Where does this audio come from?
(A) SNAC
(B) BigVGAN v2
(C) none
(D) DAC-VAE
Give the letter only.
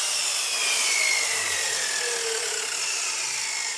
C